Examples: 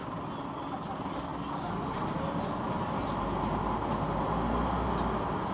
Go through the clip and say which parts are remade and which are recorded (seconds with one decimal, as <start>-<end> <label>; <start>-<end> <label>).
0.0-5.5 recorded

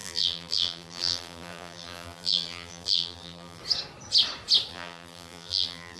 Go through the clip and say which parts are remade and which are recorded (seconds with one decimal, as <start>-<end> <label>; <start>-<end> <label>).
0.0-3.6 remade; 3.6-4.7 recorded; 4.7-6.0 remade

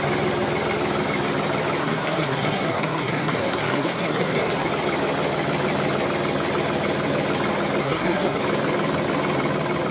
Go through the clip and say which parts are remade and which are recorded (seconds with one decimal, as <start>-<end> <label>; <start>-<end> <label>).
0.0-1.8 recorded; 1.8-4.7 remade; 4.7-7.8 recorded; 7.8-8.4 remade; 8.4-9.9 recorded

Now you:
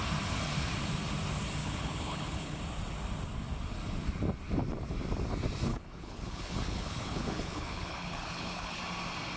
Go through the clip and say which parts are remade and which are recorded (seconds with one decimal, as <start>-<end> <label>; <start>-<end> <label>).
0.0-1.6 recorded; 1.6-2.6 remade; 2.6-5.7 recorded; 5.7-8.8 remade; 8.8-9.4 recorded